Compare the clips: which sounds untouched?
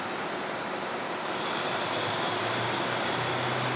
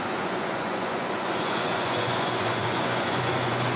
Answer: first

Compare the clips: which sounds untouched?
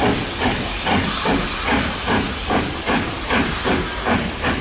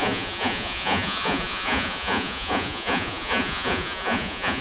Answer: first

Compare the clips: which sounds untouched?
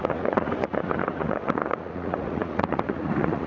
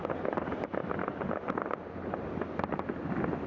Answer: second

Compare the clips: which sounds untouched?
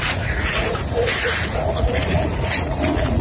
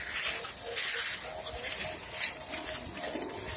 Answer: second